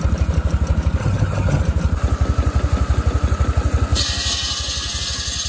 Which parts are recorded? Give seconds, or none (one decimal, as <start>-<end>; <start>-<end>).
0.0-1.0; 1.6-5.5